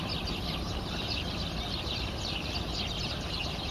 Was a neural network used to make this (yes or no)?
yes